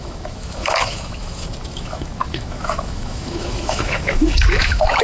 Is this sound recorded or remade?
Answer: remade